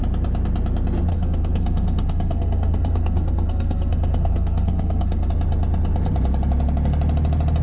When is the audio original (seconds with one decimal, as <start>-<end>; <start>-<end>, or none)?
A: 0.0-1.1; 5.3-7.6

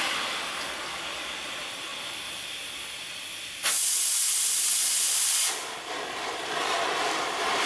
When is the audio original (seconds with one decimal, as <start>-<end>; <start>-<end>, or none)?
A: 0.0-4.2; 7.2-7.7

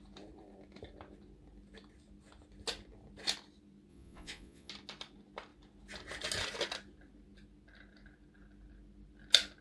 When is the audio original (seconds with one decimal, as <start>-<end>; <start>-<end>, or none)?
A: 0.0-3.9; 4.7-9.6

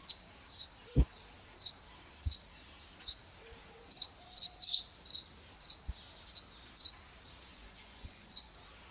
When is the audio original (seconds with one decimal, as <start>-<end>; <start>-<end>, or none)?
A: 0.0-7.5; 8.5-8.9

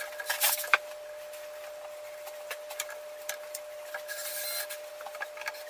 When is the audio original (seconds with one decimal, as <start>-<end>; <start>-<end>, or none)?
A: 4.3-4.9

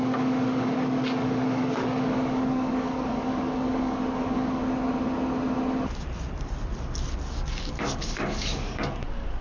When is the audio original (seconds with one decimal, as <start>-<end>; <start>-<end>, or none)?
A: 4.6-7.3